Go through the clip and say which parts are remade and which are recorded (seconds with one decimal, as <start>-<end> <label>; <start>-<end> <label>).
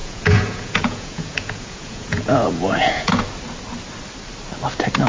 0.0-3.1 remade; 3.1-5.1 recorded